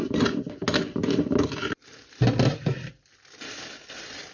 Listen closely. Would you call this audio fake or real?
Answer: real